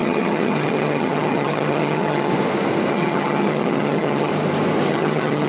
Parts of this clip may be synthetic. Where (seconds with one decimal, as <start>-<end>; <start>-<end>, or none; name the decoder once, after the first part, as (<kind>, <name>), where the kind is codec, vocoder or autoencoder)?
0.0-2.3 (vocoder, HiFi-GAN); 2.9-4.3; 4.9-5.5